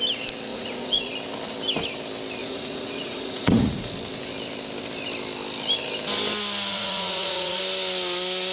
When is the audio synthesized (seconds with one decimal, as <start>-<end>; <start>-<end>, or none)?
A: 0.5-1.1; 2.4-3.9; 6.7-7.6